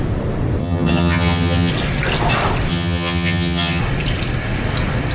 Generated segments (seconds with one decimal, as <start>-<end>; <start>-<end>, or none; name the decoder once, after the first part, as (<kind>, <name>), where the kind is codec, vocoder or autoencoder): 0.6-1.7 (vocoder, HiFi-GAN); 2.7-3.8